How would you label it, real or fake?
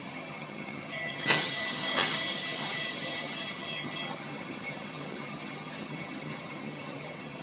fake